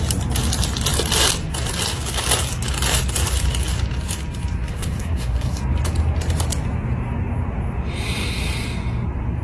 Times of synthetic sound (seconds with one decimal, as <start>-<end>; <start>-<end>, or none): 4.7-5.6